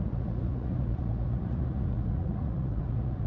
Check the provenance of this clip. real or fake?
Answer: fake